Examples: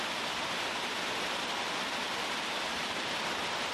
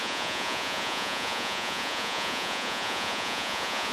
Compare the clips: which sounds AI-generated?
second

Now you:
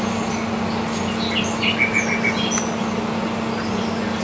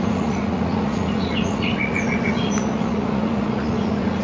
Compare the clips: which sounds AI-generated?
second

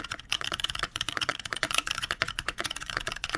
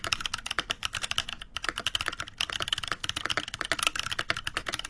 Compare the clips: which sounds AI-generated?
first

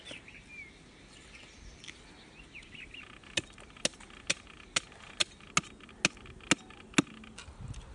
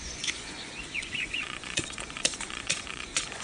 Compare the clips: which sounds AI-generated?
second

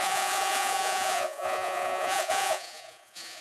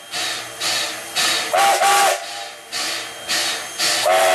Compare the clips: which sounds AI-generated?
first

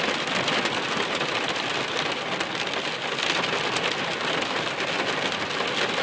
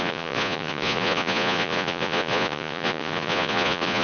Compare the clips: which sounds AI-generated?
second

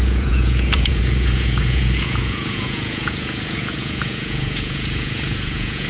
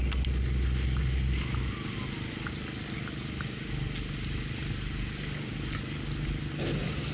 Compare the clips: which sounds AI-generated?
first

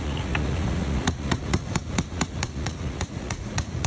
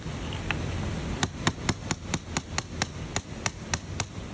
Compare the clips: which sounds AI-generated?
first